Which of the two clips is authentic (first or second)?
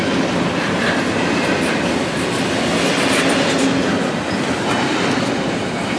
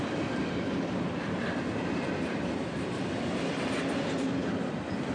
first